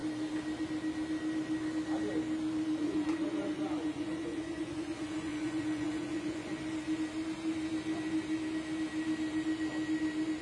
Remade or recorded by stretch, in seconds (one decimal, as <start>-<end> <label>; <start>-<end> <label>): 0.0-2.8 recorded; 2.8-6.5 remade; 6.5-10.4 recorded